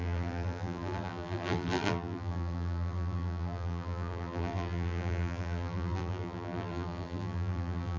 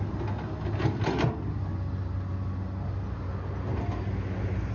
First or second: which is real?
second